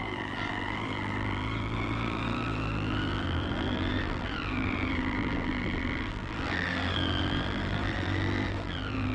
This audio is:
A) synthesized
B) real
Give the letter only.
A